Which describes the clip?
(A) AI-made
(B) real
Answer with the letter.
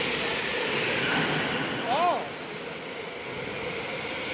B